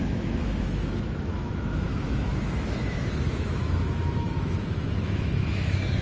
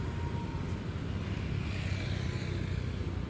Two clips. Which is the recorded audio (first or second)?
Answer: second